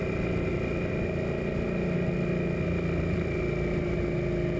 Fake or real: real